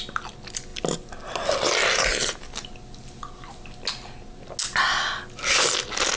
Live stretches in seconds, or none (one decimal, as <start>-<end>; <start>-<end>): 0.0-6.2